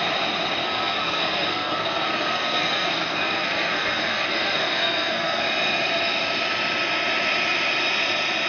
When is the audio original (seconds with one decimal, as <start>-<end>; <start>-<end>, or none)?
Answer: 0.0-0.6; 5.4-8.5